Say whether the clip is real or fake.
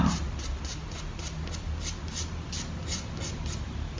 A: real